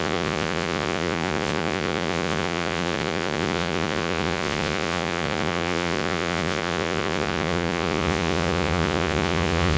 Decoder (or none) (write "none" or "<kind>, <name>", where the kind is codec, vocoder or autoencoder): vocoder, Vocos